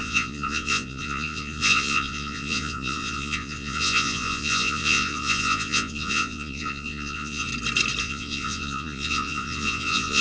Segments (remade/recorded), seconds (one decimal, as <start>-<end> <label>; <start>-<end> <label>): 0.0-7.5 remade; 7.5-8.0 recorded; 8.0-10.2 remade